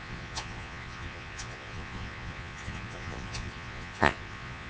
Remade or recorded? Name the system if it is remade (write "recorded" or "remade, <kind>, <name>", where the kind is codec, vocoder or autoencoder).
remade, vocoder, Vocos